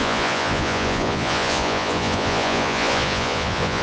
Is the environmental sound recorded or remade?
remade